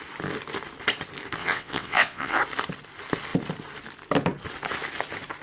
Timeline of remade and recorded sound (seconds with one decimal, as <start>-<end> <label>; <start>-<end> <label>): 0.0-1.4 recorded; 1.4-2.4 remade; 2.4-5.4 recorded